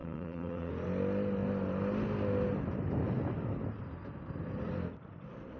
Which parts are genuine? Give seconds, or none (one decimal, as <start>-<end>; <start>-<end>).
0.7-5.6